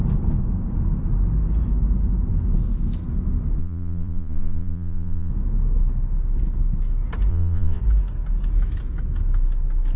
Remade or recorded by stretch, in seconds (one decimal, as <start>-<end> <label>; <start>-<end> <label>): 0.0-3.6 recorded; 3.6-5.3 remade; 5.3-7.3 recorded; 7.3-7.8 remade; 7.8-10.0 recorded